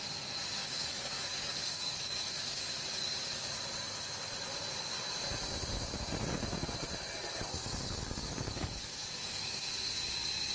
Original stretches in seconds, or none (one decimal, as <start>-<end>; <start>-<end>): 0.0-0.6; 2.7-7.6; 9.7-10.5